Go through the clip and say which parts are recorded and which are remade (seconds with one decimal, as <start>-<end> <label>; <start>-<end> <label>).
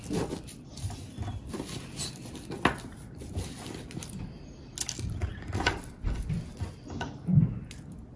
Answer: 0.0-8.2 recorded